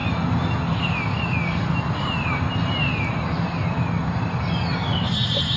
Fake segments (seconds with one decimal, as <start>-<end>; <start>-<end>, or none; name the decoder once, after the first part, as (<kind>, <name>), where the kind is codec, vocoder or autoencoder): none